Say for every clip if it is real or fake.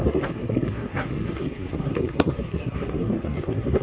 fake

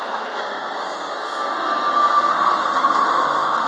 fake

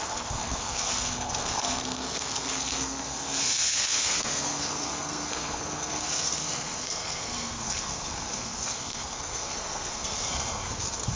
fake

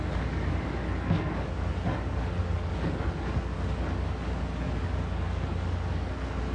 fake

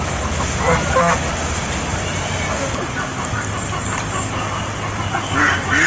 real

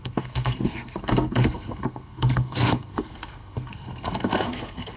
fake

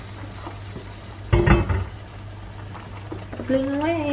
real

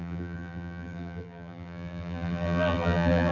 fake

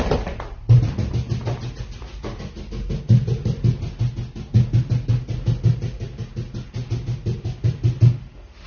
real